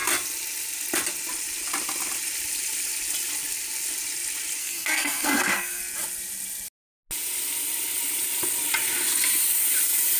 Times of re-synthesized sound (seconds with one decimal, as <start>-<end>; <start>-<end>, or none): 4.6-5.8